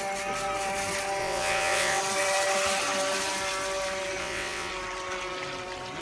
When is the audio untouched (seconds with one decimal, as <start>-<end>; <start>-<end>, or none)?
0.0-1.2; 2.0-4.2; 4.7-6.0